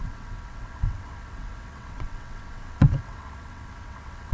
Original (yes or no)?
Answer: no